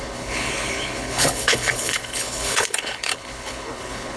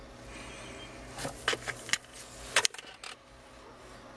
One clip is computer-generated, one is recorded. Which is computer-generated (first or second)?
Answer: first